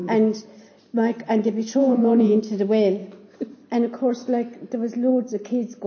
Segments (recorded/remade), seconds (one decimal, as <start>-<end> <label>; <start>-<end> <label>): 0.0-1.8 recorded; 1.8-2.4 remade; 2.4-5.9 recorded